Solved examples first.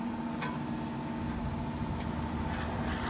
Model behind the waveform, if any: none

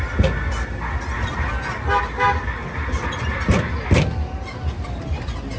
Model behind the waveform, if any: none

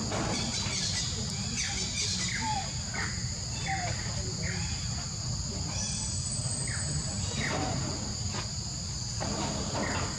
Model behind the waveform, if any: none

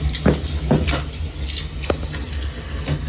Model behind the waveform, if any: none